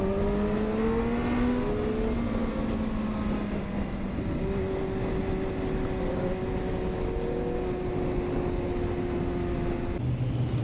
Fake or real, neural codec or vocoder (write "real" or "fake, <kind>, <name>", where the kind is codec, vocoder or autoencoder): real